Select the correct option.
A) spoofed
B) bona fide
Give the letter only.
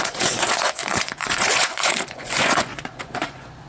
A